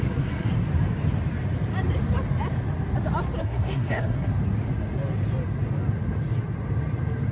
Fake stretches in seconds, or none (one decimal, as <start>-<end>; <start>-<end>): 0.0-0.5; 3.4-4.3